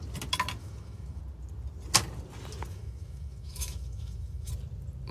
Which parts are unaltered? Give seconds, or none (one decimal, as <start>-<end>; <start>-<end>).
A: 0.0-0.6; 1.2-2.7; 4.5-5.1